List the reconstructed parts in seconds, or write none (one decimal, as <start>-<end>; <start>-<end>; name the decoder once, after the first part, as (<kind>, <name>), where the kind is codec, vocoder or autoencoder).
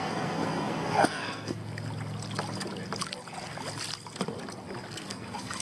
0.0-1.6 (codec, SNAC); 4.9-5.6